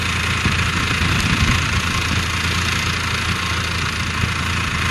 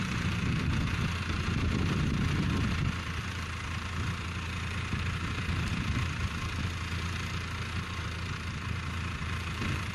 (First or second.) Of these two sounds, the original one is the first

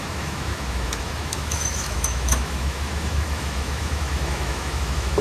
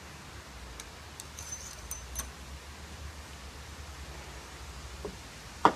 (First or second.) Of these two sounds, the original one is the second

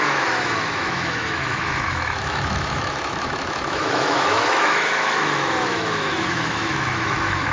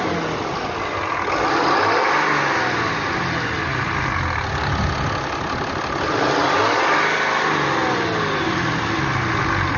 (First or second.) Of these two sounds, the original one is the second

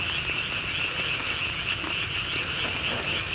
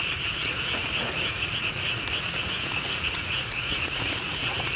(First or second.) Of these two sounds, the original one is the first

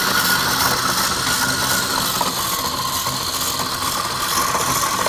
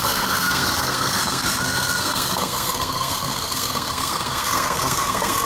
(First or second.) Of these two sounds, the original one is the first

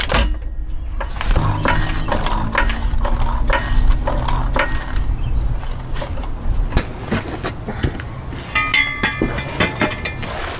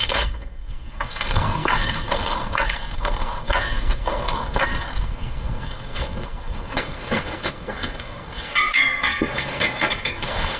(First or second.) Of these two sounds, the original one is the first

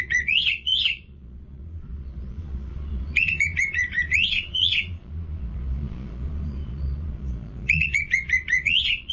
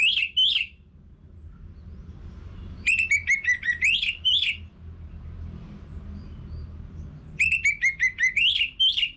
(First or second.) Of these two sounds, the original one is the second